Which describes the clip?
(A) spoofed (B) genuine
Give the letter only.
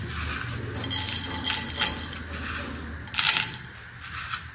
B